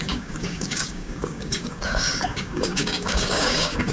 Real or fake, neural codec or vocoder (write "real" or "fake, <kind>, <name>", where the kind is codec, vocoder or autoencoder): fake, codec, DAC